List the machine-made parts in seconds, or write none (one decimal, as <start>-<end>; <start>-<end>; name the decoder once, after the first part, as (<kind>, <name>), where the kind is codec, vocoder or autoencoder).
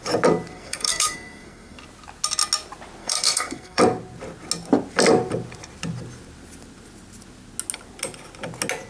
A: 0.5-1.8 (codec, SNAC); 3.0-3.8